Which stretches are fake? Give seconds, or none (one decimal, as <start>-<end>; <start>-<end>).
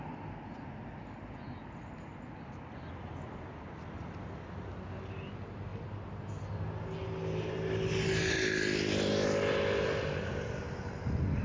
none